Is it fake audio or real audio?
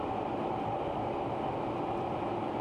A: fake